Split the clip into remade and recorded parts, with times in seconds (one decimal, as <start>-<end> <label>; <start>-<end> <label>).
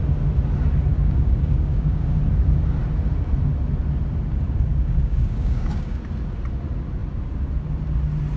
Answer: 0.0-0.9 recorded; 0.9-2.2 remade; 2.2-4.7 recorded; 4.7-6.0 remade; 6.0-8.4 recorded